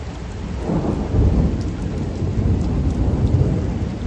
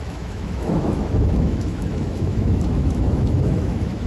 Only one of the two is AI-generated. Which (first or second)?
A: second